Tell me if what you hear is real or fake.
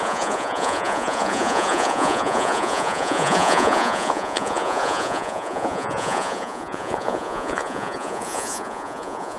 fake